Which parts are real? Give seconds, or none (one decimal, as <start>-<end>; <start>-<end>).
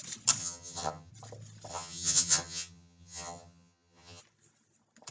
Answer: 0.0-0.4; 1.1-1.7; 4.2-5.1